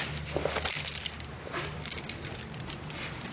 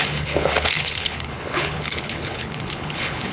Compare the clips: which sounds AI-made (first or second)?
second